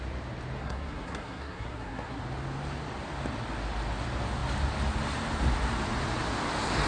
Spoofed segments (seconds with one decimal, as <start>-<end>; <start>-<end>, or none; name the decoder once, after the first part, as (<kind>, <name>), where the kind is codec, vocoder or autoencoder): 0.6-2.2 (codec, SNAC)